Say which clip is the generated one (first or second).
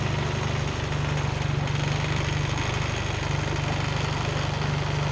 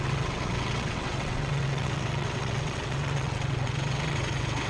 second